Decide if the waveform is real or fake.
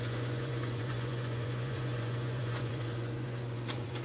fake